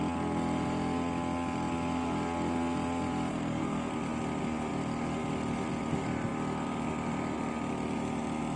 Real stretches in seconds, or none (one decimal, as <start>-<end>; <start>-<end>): 0.0-3.3; 3.9-8.6